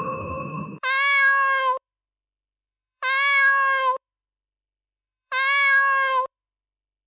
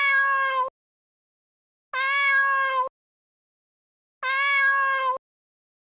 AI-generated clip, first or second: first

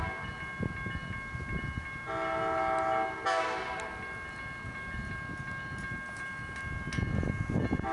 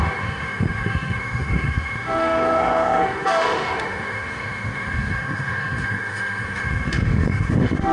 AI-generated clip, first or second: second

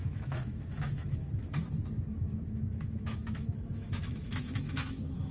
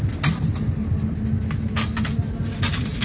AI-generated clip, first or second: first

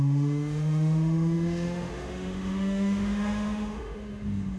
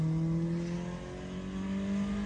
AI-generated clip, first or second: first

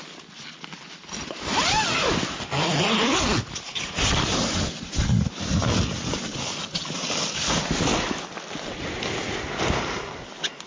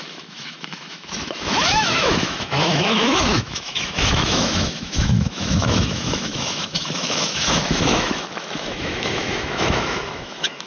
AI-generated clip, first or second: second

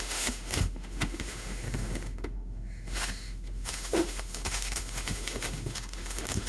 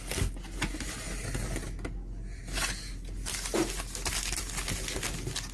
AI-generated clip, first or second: first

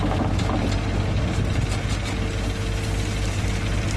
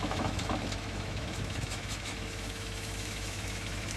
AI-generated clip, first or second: second